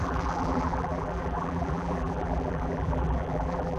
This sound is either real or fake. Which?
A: fake